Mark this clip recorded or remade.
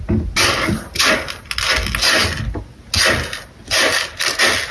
recorded